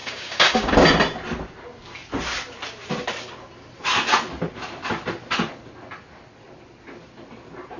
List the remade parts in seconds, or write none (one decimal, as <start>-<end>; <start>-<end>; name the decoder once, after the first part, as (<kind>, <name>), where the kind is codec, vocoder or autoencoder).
0.0-0.7 (codec, DAC)